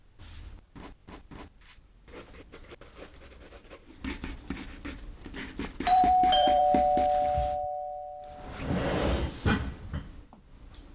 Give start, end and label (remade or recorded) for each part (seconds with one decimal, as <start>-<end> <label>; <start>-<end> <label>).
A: 0.0-6.6 remade; 6.6-9.2 recorded; 9.2-10.9 remade